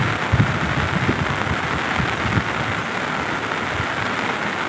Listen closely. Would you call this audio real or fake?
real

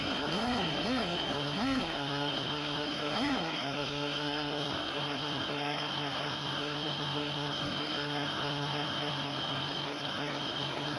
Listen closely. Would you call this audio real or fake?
fake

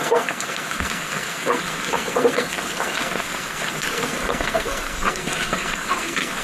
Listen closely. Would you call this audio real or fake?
fake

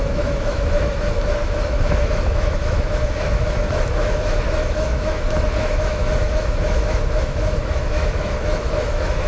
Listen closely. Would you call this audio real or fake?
fake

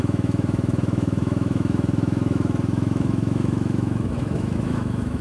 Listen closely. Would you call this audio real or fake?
fake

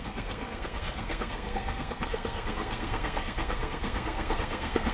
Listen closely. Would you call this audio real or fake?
fake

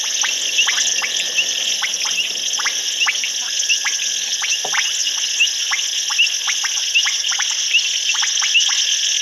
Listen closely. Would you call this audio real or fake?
real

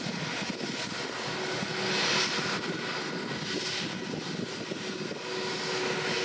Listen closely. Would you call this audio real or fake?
real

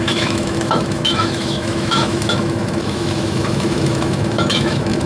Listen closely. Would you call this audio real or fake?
fake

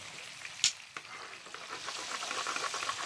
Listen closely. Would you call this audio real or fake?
real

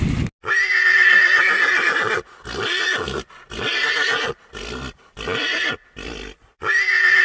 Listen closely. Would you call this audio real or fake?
real